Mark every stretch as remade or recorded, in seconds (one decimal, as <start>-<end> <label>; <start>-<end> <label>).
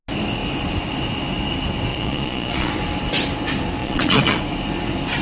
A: 0.0-1.9 recorded; 1.9-2.7 remade; 2.7-3.8 recorded; 3.8-4.4 remade; 4.4-5.2 recorded